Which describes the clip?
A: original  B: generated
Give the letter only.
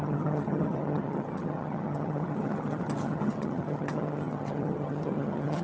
B